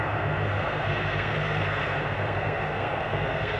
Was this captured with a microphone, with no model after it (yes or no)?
no